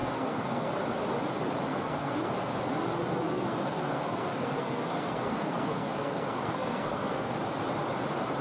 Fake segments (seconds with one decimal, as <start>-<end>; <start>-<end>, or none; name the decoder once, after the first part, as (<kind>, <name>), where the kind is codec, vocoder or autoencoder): 0.0-0.7 (codec, SNAC); 1.7-2.3; 3.2-7.4